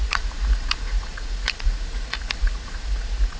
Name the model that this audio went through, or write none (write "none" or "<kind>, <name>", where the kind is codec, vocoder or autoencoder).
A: vocoder, Vocos